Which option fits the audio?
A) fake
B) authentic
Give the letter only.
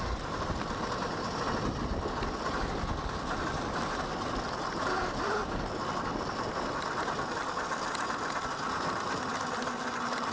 B